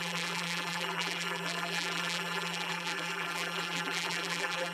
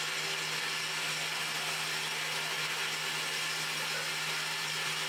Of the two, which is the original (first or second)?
second